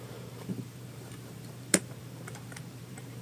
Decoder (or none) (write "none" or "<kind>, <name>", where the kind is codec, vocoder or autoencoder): vocoder, BigVGAN v2